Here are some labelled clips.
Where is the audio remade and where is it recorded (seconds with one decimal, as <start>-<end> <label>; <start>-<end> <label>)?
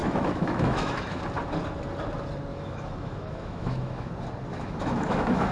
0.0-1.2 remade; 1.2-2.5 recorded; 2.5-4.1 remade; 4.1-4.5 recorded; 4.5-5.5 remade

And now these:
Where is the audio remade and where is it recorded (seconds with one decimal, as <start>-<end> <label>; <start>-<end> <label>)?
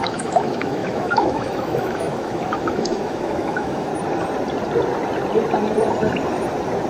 0.0-3.9 remade; 3.9-6.9 recorded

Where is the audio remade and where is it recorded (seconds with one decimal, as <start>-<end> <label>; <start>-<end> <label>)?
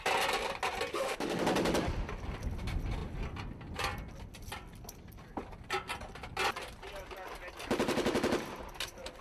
0.0-0.9 recorded; 0.9-1.4 remade; 1.4-9.2 recorded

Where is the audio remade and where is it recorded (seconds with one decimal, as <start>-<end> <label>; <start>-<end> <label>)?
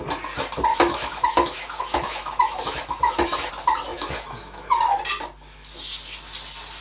0.0-0.7 recorded; 0.7-3.5 remade; 3.5-3.9 recorded; 3.9-4.8 remade; 4.8-6.8 recorded